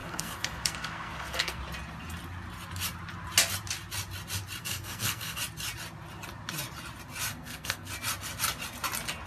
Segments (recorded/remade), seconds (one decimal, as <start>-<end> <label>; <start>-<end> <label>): 0.0-1.6 remade; 1.6-4.6 recorded; 4.6-5.4 remade; 5.4-7.3 recorded; 7.3-7.9 remade; 7.9-9.3 recorded